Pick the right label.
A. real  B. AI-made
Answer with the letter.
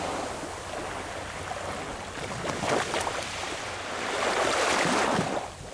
A